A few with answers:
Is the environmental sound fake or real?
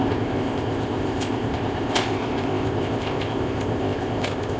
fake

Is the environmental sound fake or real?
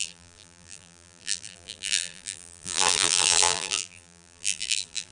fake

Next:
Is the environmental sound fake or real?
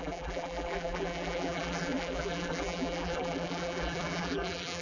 fake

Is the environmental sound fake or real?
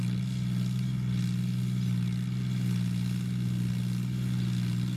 real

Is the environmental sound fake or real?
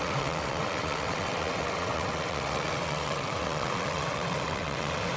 fake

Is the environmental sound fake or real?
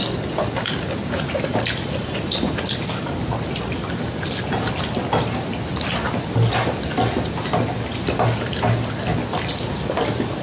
real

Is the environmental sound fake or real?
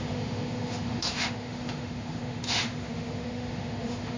fake